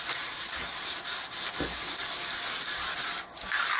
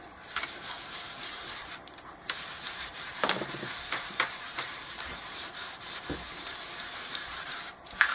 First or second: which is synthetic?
second